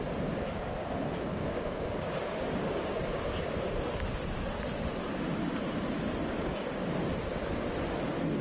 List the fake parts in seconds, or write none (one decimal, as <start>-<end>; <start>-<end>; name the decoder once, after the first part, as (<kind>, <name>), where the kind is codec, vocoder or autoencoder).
1.3-4.5 (codec, DAC)